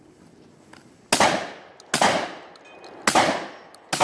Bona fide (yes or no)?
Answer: yes